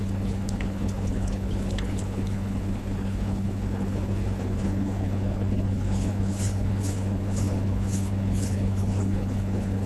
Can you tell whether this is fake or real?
fake